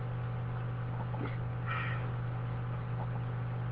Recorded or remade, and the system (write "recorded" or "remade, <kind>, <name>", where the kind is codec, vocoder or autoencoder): recorded